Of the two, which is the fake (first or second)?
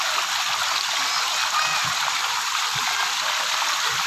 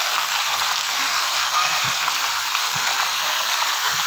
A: second